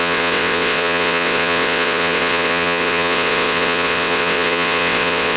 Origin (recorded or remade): remade